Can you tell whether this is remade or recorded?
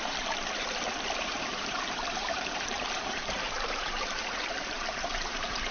remade